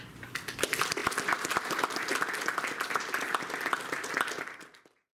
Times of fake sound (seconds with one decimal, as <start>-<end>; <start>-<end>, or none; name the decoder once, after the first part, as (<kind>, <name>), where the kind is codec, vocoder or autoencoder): none